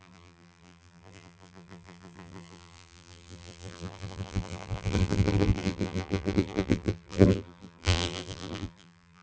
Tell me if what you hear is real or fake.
fake